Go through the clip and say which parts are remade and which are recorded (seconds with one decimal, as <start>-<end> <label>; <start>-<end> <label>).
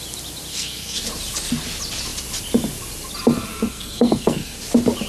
0.0-0.5 recorded; 0.5-1.0 remade; 1.0-3.5 recorded; 3.5-4.6 remade; 4.6-5.1 recorded